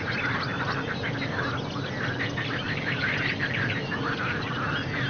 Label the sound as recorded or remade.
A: recorded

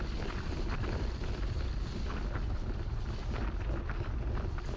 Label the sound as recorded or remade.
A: recorded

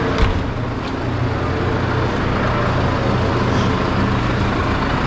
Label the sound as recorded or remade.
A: recorded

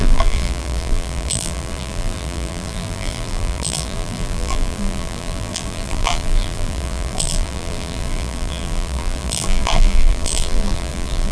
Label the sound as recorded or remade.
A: remade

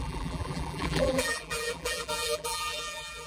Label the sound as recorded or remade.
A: remade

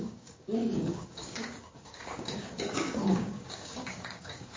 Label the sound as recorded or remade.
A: remade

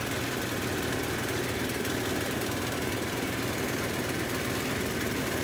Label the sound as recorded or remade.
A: recorded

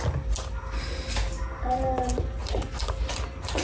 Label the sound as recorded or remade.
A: recorded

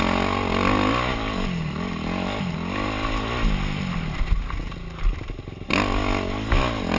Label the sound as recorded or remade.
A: recorded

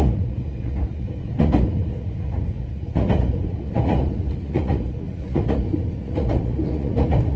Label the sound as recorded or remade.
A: remade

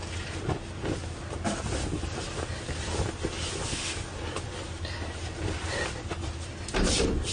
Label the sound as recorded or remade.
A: recorded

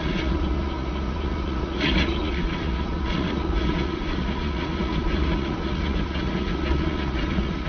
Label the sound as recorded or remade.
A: remade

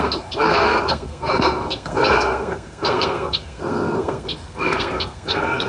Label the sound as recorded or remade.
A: remade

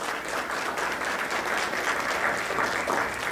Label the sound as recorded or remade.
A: recorded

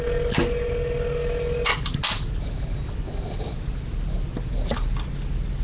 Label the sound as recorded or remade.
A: recorded